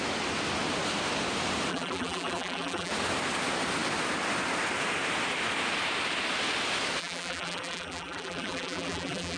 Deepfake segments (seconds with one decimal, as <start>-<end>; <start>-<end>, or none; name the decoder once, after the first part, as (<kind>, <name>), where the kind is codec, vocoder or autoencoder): 1.7-2.9 (vocoder, BigVGAN v2); 7.0-9.4